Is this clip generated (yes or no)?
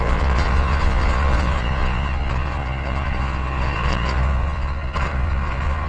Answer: yes